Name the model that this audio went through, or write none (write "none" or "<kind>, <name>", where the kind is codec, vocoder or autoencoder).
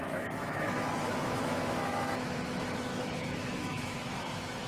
autoencoder, DAC-VAE